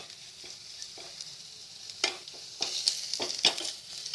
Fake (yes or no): no